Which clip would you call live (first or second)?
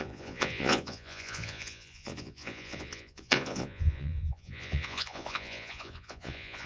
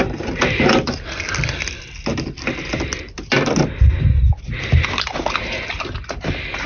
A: second